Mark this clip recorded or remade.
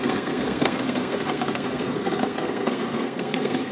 remade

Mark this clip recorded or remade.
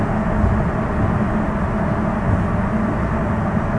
recorded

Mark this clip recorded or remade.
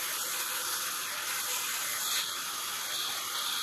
remade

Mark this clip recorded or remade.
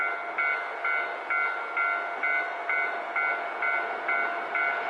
recorded